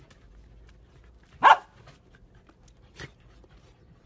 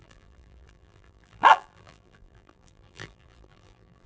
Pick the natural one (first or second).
first